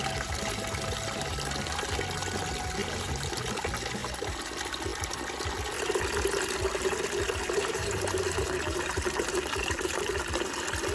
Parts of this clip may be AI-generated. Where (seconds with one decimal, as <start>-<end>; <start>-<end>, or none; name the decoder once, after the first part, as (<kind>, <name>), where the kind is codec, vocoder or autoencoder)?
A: 2.8-3.3 (vocoder, BigVGAN v2); 4.0-4.5; 7.6-10.2